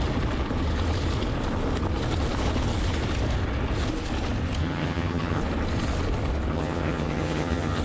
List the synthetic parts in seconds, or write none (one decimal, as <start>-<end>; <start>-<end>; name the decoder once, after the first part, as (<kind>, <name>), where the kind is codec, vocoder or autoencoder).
4.6-5.4 (vocoder, HiFi-GAN); 6.5-7.8

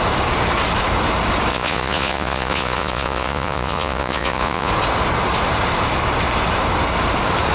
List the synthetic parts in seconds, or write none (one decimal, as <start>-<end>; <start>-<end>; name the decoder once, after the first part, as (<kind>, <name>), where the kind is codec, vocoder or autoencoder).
1.5-4.7 (vocoder, Vocos)

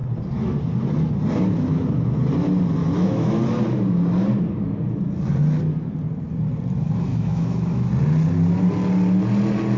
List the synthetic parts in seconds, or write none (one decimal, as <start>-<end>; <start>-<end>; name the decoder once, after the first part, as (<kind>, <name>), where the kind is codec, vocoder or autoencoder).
2.8-3.4 (autoencoder, DAC-VAE); 7.1-7.9

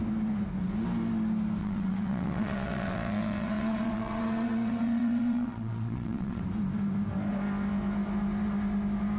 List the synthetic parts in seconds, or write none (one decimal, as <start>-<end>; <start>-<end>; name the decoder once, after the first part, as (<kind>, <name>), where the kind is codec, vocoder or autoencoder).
1.6-6.4 (vocoder, WaveNeXt)

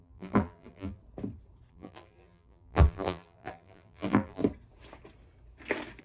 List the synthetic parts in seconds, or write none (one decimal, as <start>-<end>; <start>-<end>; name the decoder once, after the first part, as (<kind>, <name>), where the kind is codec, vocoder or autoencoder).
0.0-1.0 (vocoder, BigVGAN v2); 1.7-4.4

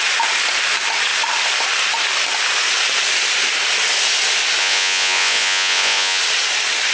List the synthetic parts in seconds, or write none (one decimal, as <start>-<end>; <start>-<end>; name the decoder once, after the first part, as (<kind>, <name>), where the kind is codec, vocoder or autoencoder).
4.6-6.2 (vocoder, Vocos)

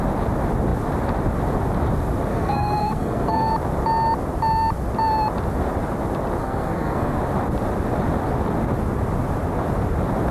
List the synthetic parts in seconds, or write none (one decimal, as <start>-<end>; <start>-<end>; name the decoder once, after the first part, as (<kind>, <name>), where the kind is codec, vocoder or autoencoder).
2.3-3.5 (codec, SNAC); 6.4-7.2

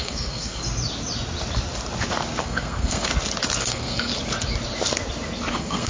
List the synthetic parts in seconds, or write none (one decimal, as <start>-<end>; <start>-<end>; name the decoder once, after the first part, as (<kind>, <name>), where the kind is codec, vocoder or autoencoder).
0.0-0.6 (codec, SNAC); 2.4-3.1; 3.6-4.1; 5.5-5.9